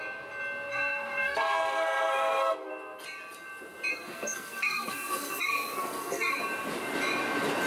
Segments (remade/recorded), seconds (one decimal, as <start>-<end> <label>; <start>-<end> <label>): 0.0-0.7 recorded; 0.7-2.7 remade; 2.7-3.9 recorded; 3.9-6.4 remade; 6.4-7.7 recorded